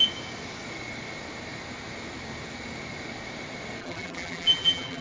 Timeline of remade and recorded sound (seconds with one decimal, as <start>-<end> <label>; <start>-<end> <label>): 0.0-3.8 recorded; 3.8-5.0 remade